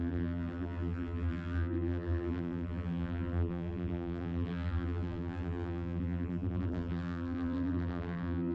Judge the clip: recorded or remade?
remade